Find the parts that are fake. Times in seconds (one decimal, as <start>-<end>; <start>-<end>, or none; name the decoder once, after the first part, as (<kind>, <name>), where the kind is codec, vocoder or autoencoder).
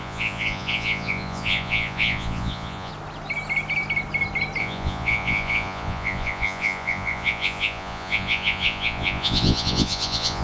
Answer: 0.0-2.9 (vocoder, Vocos); 4.6-10.4